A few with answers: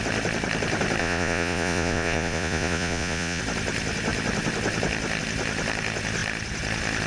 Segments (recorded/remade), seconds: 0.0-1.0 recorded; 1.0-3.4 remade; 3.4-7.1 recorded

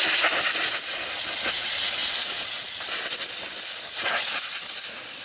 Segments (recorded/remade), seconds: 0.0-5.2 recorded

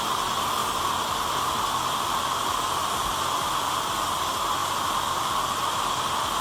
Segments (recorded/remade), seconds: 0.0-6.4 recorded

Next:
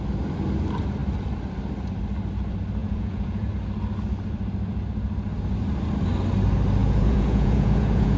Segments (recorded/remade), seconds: 0.0-2.8 recorded; 2.8-3.5 remade; 3.5-6.8 recorded; 6.8-8.2 remade

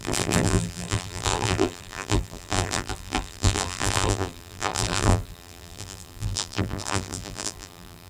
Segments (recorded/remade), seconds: 0.0-8.1 remade

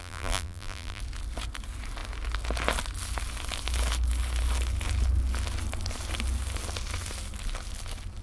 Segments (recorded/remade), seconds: 0.0-1.0 remade; 1.0-8.2 recorded